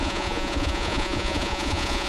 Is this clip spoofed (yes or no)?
yes